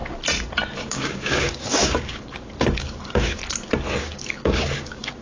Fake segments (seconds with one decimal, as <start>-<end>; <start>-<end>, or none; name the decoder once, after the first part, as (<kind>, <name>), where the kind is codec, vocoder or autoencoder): 0.8-3.4 (codec, DAC); 4.0-5.2